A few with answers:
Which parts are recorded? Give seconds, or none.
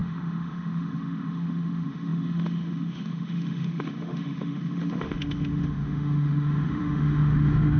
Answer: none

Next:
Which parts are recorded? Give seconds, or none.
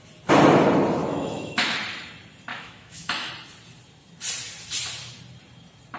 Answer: 0.0-1.0; 1.7-2.5; 3.3-6.0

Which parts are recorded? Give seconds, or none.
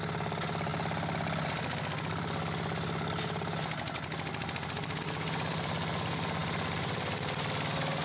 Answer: 0.0-8.0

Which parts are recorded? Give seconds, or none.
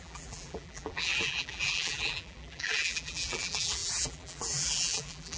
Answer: none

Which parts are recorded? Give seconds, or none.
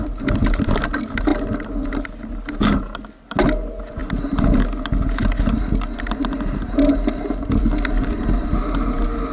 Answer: 0.0-9.3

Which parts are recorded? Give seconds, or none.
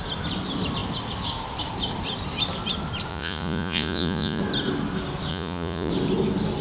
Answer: 0.0-3.1; 4.4-5.3; 5.9-6.6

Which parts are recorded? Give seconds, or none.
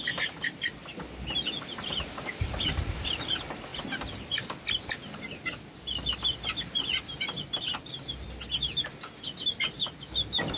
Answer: 0.0-10.6